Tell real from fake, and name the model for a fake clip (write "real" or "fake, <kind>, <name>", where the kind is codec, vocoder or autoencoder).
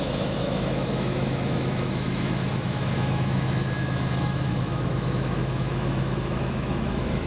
fake, autoencoder, DAC-VAE